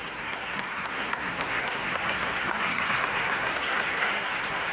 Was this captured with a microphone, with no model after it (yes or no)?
no